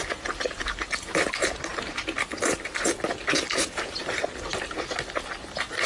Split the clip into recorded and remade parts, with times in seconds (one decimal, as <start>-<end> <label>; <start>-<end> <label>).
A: 0.0-5.9 recorded